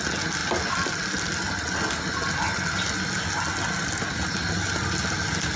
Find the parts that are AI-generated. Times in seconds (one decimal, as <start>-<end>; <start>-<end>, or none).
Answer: none